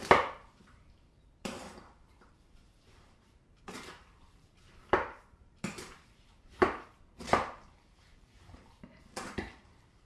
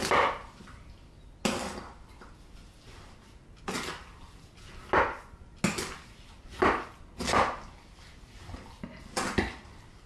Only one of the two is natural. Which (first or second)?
second